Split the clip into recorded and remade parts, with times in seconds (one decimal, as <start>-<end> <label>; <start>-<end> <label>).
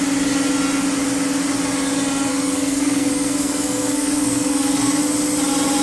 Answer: 0.0-2.3 recorded; 2.3-5.0 remade; 5.0-5.8 recorded